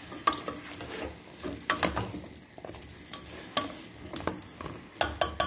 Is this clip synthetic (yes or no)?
no